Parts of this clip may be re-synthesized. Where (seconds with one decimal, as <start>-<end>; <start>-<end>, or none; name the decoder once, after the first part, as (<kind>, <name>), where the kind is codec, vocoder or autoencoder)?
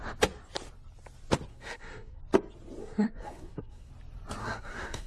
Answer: 1.5-2.2 (codec, SNAC); 2.8-3.9; 4.4-5.1